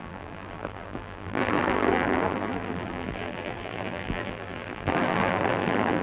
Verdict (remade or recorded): remade